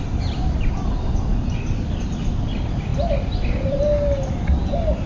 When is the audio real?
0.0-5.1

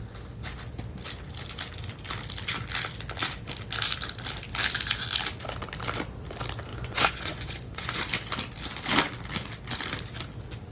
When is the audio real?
0.0-6.7; 8.0-10.7

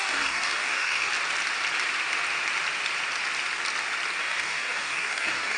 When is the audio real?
1.1-4.2